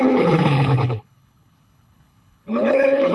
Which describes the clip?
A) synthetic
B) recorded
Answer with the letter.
A